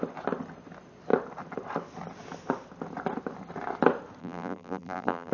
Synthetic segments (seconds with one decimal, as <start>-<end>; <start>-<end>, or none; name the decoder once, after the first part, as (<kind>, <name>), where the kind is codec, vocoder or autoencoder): 4.2-5.3 (vocoder, BigVGAN v2)